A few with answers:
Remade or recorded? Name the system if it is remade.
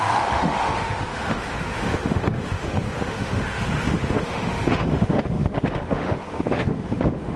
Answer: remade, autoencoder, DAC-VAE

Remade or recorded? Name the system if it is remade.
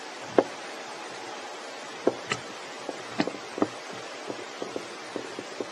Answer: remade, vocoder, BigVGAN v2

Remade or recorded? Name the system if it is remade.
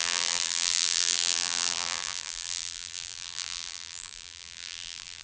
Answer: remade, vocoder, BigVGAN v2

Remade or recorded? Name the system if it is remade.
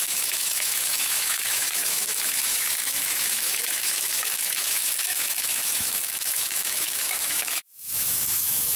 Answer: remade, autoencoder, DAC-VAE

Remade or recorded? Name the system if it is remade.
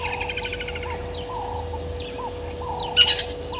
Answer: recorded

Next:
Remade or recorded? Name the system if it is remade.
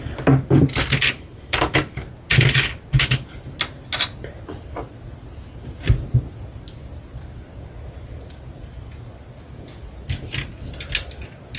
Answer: recorded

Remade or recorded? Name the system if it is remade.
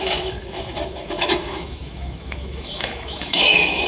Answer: remade, autoencoder, DAC-VAE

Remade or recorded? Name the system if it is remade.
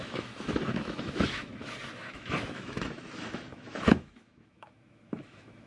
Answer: remade, autoencoder, DAC-VAE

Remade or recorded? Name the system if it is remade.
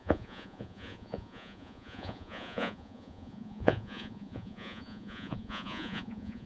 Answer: remade, vocoder, Vocos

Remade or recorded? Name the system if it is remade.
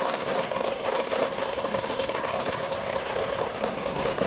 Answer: remade, codec, SNAC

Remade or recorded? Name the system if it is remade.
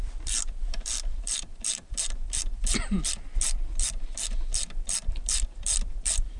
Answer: remade, vocoder, BigVGAN v2